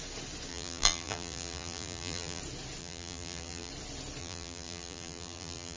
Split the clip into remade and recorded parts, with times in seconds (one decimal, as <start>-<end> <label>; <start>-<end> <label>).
0.0-0.5 recorded; 0.5-2.4 remade; 2.4-2.8 recorded; 2.8-3.7 remade; 3.7-4.2 recorded; 4.2-5.8 remade